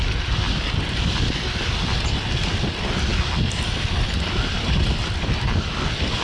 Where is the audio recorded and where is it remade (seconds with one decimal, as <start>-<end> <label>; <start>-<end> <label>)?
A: 0.0-6.2 recorded